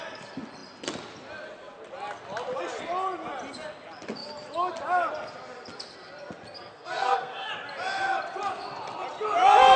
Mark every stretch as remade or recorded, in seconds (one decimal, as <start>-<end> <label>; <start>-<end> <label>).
0.0-6.7 recorded; 6.7-7.5 remade; 7.5-9.8 recorded